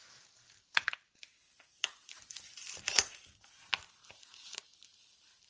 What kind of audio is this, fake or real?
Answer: fake